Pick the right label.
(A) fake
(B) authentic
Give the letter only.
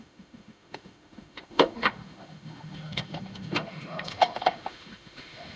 A